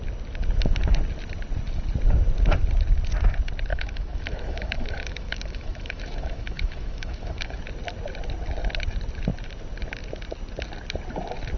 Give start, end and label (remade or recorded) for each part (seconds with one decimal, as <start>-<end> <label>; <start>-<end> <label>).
0.0-3.7 recorded; 3.7-7.6 remade; 7.6-11.6 recorded

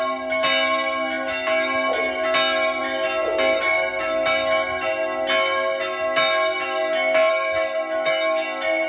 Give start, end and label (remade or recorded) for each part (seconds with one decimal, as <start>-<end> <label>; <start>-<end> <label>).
0.0-8.9 recorded

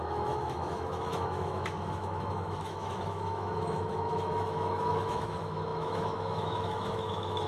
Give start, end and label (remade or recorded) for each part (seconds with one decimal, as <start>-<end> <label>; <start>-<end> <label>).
0.0-7.5 remade